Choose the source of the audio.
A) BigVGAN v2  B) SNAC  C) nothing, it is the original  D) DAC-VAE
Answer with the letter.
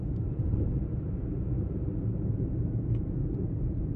A